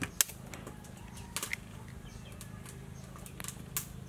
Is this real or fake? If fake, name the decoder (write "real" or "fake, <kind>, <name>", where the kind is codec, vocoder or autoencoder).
real